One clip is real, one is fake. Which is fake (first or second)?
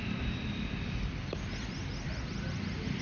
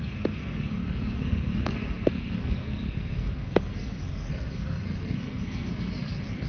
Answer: second